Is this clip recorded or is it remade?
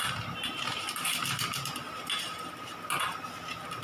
recorded